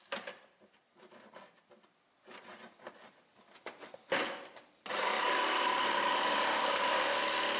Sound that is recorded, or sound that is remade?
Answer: recorded